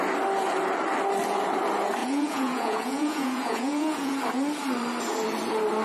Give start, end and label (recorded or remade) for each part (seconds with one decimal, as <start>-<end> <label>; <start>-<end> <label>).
0.0-2.0 recorded; 2.0-4.2 remade; 4.2-5.8 recorded